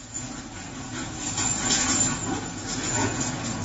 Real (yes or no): no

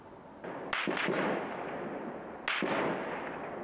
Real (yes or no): yes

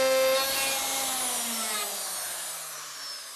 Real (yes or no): yes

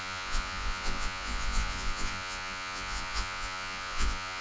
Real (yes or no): no